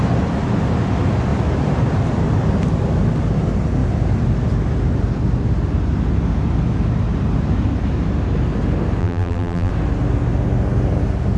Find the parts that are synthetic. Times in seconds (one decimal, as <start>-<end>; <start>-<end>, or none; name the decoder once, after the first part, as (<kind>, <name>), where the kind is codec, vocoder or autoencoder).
9.0-9.7 (vocoder, BigVGAN v2)